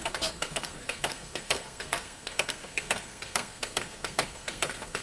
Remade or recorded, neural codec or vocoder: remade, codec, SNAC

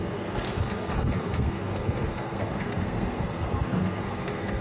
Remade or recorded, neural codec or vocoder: remade, codec, SNAC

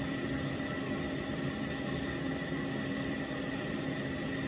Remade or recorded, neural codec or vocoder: recorded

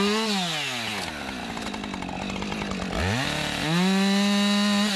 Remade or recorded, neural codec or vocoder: recorded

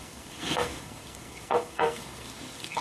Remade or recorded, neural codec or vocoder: remade, codec, SNAC